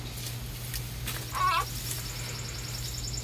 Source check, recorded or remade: recorded